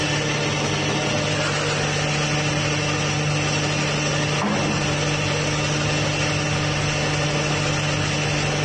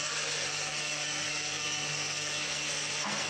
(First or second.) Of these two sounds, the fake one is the second